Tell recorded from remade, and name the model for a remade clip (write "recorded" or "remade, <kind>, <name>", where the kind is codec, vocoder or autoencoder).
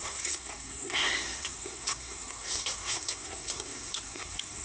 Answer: remade, codec, SNAC